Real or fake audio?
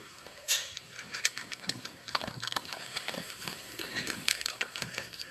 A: fake